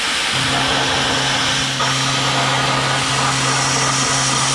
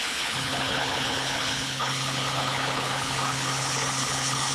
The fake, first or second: second